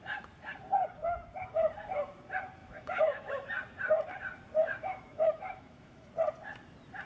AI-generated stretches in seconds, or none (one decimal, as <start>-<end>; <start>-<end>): 2.6-3.5; 4.6-6.1